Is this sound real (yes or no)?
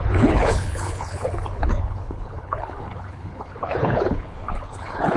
no